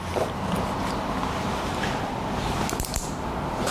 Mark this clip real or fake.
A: real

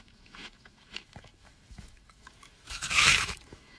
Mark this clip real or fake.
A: fake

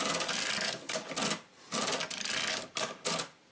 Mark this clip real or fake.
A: real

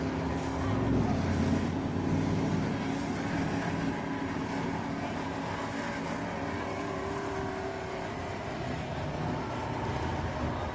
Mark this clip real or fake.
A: real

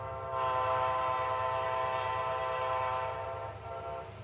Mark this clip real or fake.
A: real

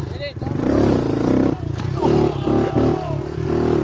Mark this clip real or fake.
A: real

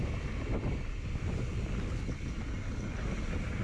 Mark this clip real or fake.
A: real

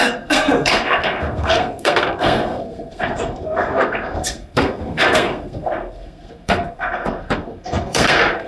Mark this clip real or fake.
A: fake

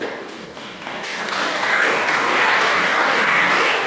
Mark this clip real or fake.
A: fake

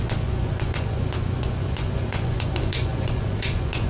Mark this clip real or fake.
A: fake